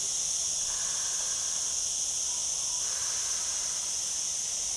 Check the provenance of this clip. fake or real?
real